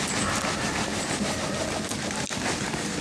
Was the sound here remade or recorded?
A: recorded